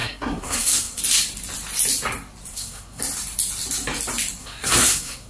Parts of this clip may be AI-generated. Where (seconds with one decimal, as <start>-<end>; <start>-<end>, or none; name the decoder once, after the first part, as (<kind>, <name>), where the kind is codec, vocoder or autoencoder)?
0.0-1.0 (codec, SNAC); 2.5-3.0; 4.4-5.3